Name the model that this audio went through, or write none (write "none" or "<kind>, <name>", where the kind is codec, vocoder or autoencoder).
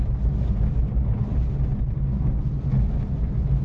none